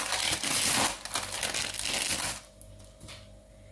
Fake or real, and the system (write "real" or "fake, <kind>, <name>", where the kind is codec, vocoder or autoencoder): real